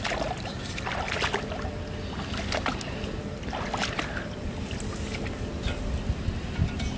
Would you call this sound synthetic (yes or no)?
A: no